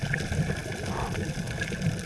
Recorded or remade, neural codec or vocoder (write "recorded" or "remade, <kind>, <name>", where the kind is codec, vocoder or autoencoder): recorded